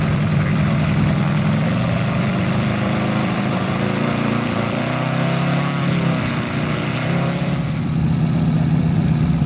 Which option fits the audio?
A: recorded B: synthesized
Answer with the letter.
B